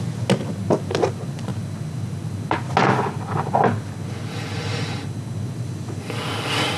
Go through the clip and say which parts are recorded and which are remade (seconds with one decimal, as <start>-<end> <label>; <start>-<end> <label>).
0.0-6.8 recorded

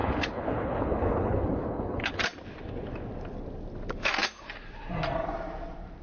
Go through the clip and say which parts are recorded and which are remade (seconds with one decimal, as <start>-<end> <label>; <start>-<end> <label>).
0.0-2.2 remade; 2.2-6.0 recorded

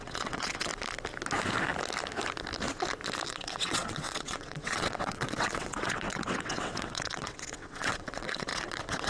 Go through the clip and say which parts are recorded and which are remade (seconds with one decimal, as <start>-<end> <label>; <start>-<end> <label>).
0.0-0.7 remade; 0.7-3.3 recorded; 3.3-9.1 remade

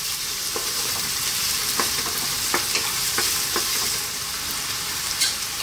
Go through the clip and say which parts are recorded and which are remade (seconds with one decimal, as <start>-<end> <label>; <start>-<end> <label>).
0.0-1.6 remade; 1.6-4.9 recorded; 4.9-5.6 remade

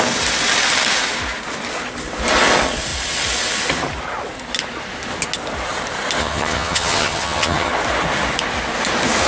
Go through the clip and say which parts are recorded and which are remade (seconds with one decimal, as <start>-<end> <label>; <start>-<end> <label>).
0.0-6.2 recorded; 6.2-7.7 remade; 7.7-9.3 recorded